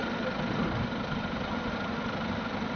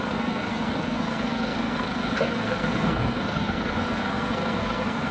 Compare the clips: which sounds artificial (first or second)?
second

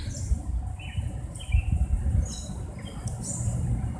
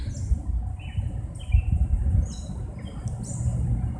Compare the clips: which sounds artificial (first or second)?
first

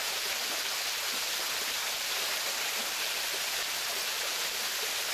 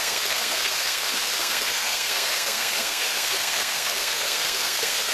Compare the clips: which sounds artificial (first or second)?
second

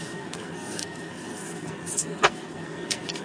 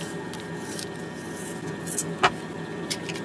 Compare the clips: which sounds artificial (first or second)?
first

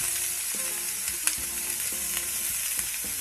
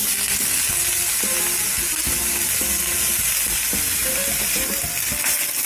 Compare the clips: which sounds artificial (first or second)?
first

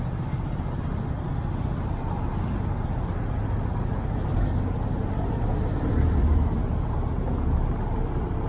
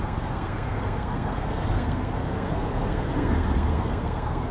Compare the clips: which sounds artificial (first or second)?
second